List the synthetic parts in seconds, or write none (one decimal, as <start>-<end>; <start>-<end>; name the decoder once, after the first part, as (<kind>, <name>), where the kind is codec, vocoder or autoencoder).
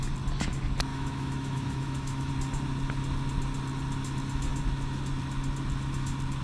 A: 0.9-2.3 (autoencoder, DAC-VAE)